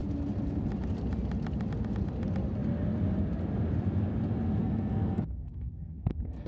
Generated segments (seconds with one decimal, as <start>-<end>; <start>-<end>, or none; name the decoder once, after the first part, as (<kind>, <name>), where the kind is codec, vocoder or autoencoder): 4.6-6.5 (codec, SNAC)